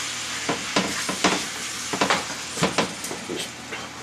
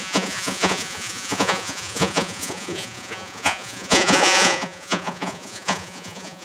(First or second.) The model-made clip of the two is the second